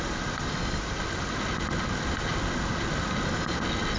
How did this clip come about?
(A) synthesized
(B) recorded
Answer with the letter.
B